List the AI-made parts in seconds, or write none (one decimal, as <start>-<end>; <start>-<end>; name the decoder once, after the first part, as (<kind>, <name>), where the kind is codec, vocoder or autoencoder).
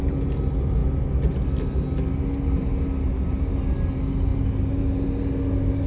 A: none